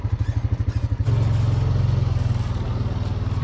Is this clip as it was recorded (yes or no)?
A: yes